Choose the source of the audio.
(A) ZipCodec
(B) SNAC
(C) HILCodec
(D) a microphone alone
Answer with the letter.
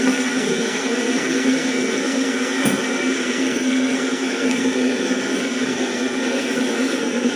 B